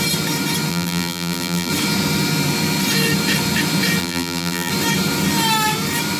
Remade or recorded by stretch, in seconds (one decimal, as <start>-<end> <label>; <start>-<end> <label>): 0.0-0.7 recorded; 0.7-1.7 remade; 1.7-4.0 recorded; 4.0-4.7 remade; 4.7-6.2 recorded

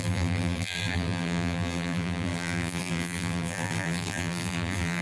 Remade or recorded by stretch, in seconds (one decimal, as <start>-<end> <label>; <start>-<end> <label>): 0.0-5.0 remade